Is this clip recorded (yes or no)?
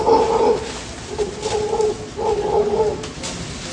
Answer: yes